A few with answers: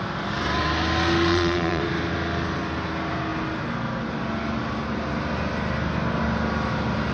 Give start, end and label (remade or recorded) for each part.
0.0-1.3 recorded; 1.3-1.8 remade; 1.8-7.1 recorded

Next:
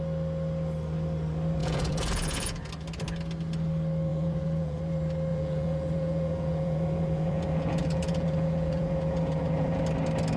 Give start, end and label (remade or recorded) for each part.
0.0-1.6 recorded; 1.6-2.7 remade; 2.7-4.1 recorded; 4.1-4.8 remade; 4.8-5.3 recorded; 5.3-9.8 remade; 9.8-10.4 recorded

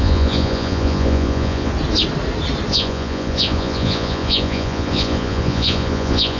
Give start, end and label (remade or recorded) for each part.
0.0-1.7 remade; 1.7-2.7 recorded; 2.7-6.4 remade

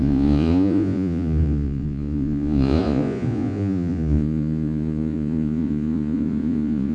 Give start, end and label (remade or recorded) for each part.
0.0-6.9 remade

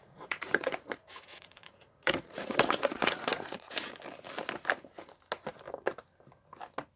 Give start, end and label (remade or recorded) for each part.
0.0-3.9 remade; 3.9-7.0 recorded